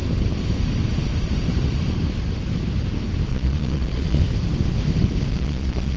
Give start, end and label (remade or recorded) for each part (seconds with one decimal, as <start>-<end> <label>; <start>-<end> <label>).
0.0-3.3 recorded; 3.3-4.2 remade; 4.2-5.3 recorded; 5.3-6.0 remade